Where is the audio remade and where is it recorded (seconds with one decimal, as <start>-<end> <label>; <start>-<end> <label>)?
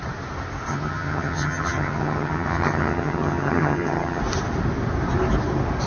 0.0-0.7 recorded; 0.7-4.2 remade; 4.2-5.9 recorded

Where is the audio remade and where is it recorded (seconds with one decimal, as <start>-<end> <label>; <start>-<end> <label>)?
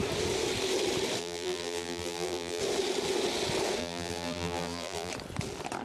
0.0-1.2 recorded; 1.2-2.6 remade; 2.6-3.8 recorded; 3.8-5.1 remade; 5.1-5.8 recorded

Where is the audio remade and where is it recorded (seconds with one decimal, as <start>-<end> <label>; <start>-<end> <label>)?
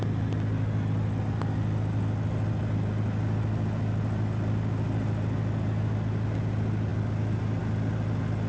0.0-8.5 recorded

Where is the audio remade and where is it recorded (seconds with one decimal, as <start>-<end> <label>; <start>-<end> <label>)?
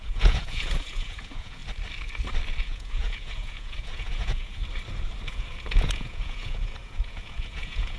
0.0-1.6 remade; 1.6-2.6 recorded; 2.6-4.6 remade; 4.6-5.3 recorded; 5.3-8.0 remade